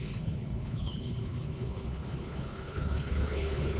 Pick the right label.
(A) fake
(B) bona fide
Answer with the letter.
A